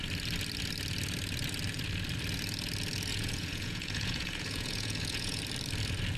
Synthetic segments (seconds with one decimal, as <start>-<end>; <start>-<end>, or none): 3.1-5.4